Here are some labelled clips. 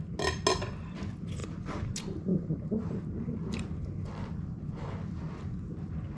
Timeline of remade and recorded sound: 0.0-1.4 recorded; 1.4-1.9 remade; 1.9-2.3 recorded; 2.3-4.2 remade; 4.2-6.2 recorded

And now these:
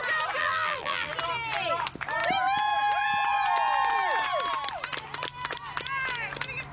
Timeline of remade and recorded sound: 0.0-0.4 recorded; 0.4-1.1 remade; 1.1-6.7 recorded

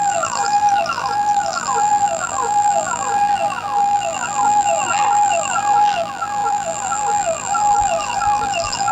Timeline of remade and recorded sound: 0.0-8.9 remade

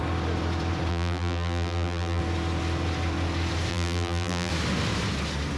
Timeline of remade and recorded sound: 0.0-0.9 recorded; 0.9-2.2 remade; 2.2-3.7 recorded; 3.7-4.5 remade; 4.5-5.6 recorded

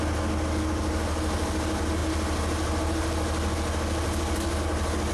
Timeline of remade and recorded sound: 0.0-5.1 recorded

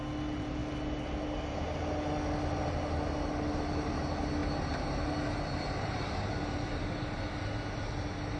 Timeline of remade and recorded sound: 0.0-8.4 recorded

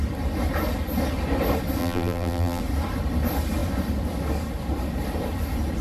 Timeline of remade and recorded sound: 0.0-1.8 recorded; 1.8-2.6 remade; 2.6-5.8 recorded

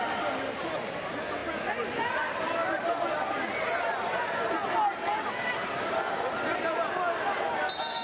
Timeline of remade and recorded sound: 0.0-4.6 recorded; 4.6-5.8 remade; 5.8-8.0 recorded